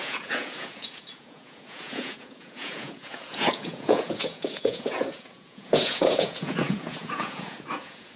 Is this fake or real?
fake